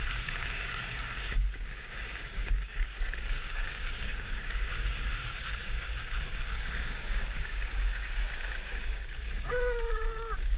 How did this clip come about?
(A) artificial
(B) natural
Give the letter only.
A